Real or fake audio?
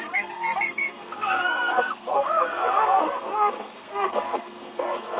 fake